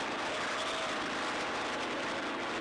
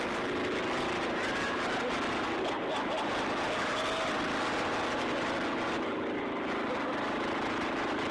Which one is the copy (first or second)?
first